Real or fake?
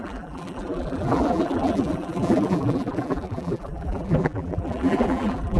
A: fake